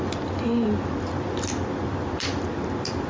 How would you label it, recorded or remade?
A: recorded